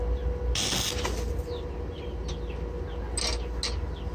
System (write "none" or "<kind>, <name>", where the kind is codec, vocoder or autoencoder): none